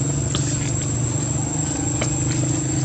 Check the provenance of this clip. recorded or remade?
recorded